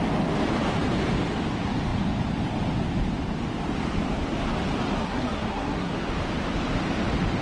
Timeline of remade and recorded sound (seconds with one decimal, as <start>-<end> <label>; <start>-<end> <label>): 0.0-5.0 recorded; 5.0-5.9 remade; 5.9-7.4 recorded